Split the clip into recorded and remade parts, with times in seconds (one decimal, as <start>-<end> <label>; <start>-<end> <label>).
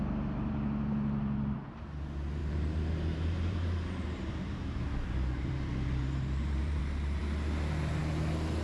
0.0-2.4 recorded; 2.4-6.8 remade; 6.8-8.6 recorded